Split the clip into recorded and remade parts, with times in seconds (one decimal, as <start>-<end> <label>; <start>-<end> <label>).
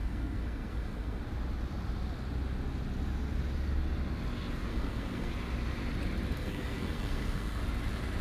0.0-1.2 remade; 1.2-4.7 recorded; 4.7-5.3 remade; 5.3-6.3 recorded; 6.3-7.6 remade; 7.6-8.2 recorded